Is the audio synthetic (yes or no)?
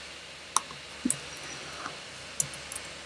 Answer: no